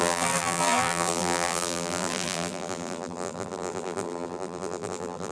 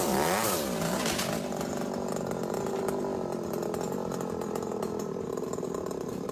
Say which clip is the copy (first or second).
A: first